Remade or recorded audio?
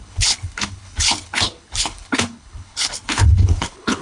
remade